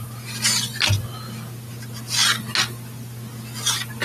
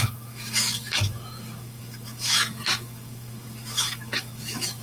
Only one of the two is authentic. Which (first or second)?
first